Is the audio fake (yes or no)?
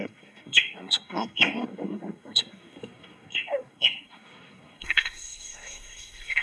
yes